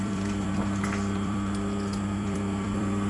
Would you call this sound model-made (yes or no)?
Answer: yes